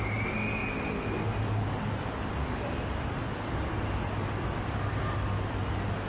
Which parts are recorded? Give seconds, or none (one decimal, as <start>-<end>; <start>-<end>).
0.0-6.1